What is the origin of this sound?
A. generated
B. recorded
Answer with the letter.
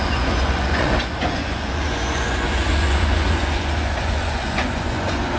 A